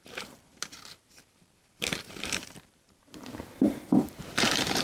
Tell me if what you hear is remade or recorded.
remade